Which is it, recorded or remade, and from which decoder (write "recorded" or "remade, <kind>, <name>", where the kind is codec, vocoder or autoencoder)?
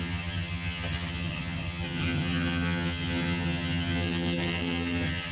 remade, vocoder, HiFi-GAN